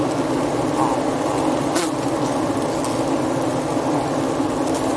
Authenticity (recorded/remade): recorded